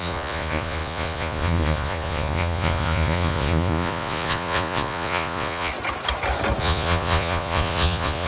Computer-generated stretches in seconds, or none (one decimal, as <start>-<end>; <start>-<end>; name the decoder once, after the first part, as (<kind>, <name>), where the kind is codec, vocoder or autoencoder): 0.0-5.7 (vocoder, Vocos); 6.6-8.3